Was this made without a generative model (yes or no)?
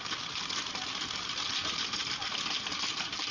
yes